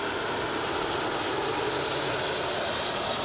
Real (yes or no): yes